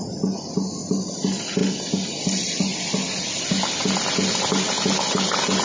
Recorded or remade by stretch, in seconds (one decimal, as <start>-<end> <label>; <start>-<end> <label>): 0.0-5.6 recorded